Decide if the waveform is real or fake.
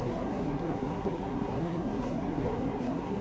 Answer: fake